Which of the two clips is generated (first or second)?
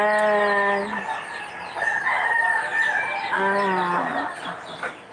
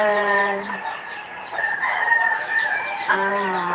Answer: second